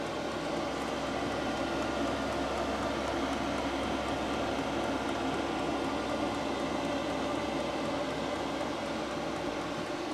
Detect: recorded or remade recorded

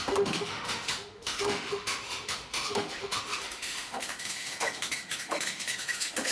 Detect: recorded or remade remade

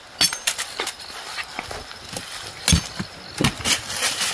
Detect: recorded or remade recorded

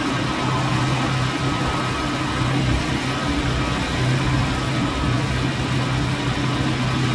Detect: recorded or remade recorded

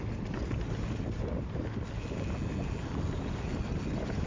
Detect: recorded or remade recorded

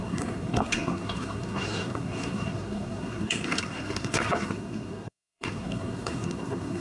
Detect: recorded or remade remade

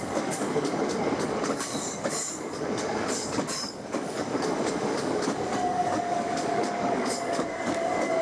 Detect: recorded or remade remade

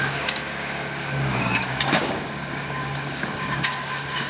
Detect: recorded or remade remade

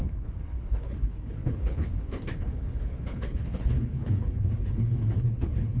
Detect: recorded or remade remade